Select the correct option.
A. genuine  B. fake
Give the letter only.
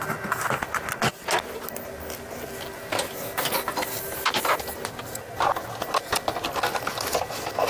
A